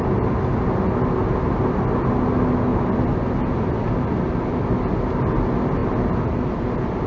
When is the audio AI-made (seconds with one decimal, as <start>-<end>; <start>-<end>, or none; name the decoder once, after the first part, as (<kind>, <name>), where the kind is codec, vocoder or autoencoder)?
none